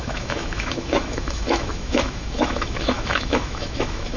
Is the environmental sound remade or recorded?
remade